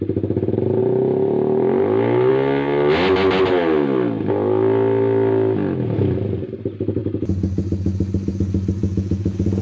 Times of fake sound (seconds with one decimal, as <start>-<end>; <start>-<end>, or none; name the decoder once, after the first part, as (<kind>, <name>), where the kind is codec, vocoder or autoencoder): 8.8-9.6 (vocoder, Vocos)